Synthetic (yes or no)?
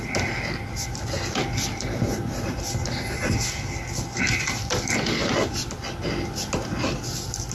no